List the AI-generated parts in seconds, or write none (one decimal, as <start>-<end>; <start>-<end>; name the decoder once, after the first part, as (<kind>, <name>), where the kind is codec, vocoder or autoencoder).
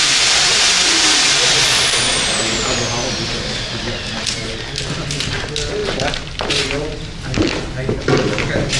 none